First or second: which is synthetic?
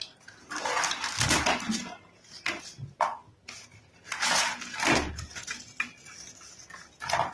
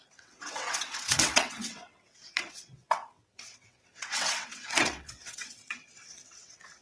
second